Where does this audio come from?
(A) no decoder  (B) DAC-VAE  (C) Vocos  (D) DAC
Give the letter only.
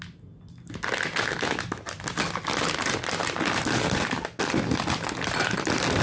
A